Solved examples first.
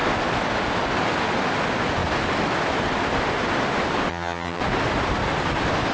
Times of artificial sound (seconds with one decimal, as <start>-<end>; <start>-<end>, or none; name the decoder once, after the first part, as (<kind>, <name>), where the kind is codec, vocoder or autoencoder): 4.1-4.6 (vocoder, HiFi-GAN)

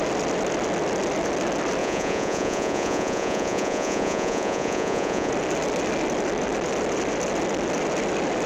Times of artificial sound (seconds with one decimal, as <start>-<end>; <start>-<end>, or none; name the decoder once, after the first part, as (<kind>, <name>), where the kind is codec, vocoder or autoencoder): 1.8-5.3 (vocoder, Vocos)

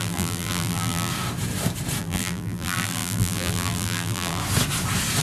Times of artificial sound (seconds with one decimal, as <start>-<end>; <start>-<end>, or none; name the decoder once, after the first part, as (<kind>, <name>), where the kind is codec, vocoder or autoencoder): 0.0-1.1 (vocoder, BigVGAN v2); 2.0-4.4

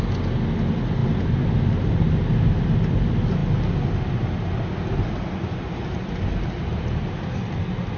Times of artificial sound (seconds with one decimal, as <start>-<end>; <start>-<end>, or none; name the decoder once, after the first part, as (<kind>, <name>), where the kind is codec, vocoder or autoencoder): none

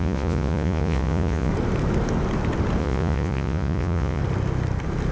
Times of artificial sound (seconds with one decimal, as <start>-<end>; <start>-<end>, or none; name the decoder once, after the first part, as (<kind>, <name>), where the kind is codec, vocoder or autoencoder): 0.0-1.5 (vocoder, Vocos); 2.8-4.2